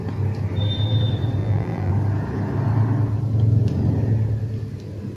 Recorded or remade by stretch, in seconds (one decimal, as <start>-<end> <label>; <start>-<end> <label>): 0.0-1.4 recorded; 1.4-1.9 remade; 1.9-5.2 recorded